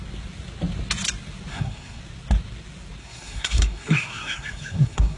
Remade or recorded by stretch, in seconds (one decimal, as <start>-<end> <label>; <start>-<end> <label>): 0.0-1.5 recorded; 1.5-2.0 remade; 2.0-3.0 recorded; 3.0-5.2 remade